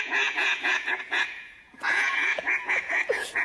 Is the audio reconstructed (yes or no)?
yes